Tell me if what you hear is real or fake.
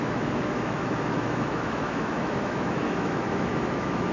fake